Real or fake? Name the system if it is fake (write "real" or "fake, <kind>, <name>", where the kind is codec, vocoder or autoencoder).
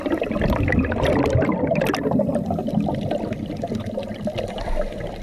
real